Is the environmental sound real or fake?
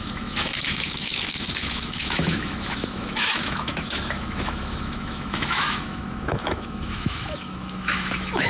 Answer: fake